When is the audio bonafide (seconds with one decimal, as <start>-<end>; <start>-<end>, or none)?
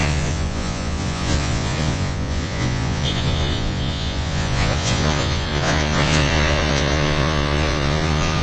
none